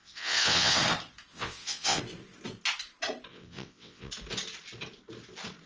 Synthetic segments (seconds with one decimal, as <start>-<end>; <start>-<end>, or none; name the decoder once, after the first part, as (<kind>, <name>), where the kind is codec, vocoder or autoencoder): 0.0-0.8 (vocoder, WaveNeXt); 1.3-2.0; 3.3-4.1